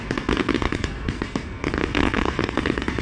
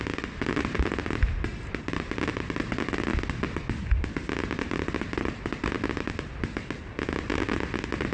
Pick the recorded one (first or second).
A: second